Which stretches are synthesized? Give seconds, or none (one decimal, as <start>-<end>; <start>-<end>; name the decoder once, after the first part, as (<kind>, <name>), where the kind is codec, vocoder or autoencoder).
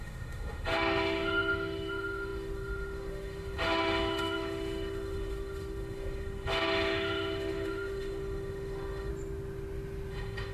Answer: 0.0-9.1 (autoencoder, DAC-VAE); 10.1-10.5